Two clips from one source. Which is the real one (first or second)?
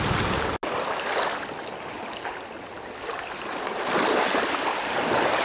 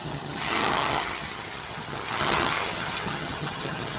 first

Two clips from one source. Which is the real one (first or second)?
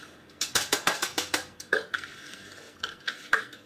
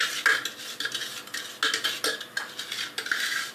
second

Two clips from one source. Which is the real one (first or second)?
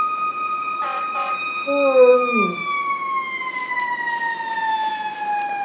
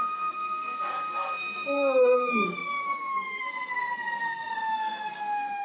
first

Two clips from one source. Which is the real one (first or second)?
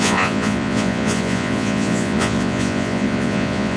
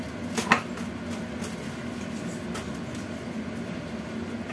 second